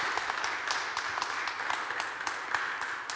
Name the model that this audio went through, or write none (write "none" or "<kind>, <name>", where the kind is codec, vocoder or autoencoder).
none